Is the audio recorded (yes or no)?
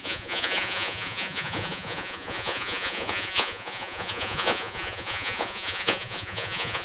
no